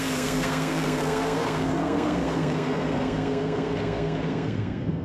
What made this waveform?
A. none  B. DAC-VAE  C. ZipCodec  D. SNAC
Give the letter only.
D